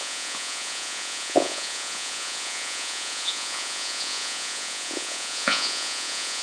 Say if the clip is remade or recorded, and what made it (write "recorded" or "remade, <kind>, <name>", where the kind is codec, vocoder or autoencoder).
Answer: remade, vocoder, Vocos